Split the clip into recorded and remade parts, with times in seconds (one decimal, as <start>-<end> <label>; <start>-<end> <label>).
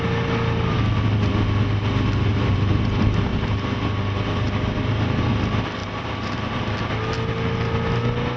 0.0-2.3 recorded; 2.3-2.9 remade; 2.9-3.3 recorded; 3.3-5.3 remade; 5.3-5.8 recorded; 5.8-6.6 remade; 6.6-8.4 recorded